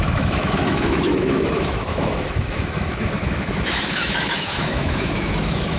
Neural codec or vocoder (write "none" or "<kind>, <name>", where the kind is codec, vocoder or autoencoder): autoencoder, DAC-VAE